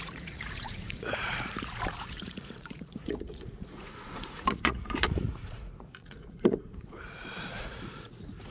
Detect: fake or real fake